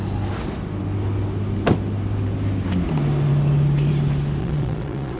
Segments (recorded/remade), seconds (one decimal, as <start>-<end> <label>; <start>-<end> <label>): 0.0-4.4 recorded; 4.4-5.2 remade